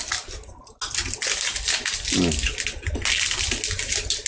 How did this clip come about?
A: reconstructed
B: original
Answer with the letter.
B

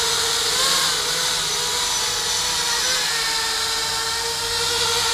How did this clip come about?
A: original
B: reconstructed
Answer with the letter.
A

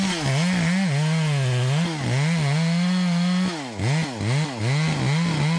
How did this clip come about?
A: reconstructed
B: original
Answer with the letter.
B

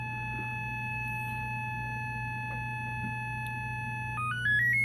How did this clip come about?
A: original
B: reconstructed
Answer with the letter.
A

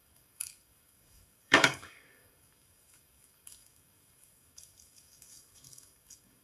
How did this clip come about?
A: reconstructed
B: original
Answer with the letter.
A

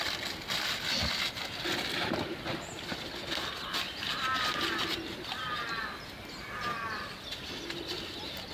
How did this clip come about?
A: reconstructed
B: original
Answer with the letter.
B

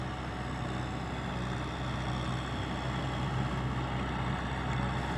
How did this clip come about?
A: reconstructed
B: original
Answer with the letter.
B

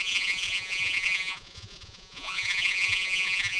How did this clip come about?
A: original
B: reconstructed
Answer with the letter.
B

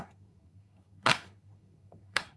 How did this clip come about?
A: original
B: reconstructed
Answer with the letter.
B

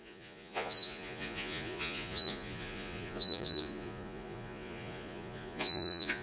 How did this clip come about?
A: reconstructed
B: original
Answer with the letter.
A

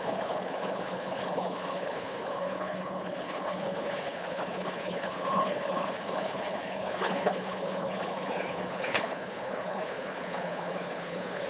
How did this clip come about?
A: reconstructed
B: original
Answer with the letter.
A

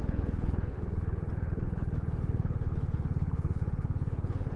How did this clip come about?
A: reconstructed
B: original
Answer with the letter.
A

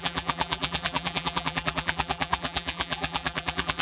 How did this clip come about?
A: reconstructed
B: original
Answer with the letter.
A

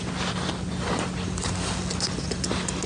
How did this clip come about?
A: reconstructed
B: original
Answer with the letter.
B